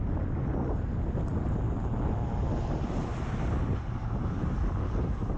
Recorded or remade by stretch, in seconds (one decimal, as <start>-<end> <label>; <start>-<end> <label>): 0.0-3.0 recorded; 3.0-5.4 remade